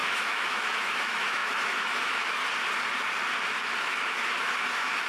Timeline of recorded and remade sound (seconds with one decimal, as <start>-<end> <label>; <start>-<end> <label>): 0.0-2.4 remade; 2.4-3.8 recorded; 3.8-5.1 remade